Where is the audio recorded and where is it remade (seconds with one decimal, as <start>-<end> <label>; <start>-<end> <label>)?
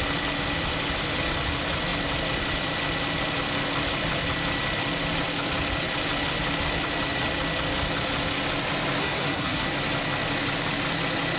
0.0-9.0 recorded; 9.0-9.7 remade; 9.7-11.4 recorded